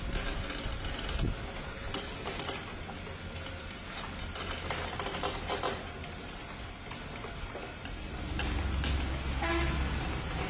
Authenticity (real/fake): real